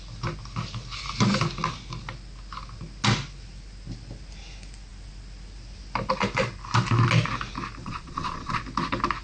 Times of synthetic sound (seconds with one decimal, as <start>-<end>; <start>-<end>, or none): 7.8-8.6